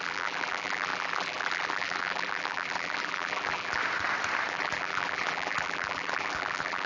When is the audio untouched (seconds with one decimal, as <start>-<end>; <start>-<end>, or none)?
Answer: 3.8-4.5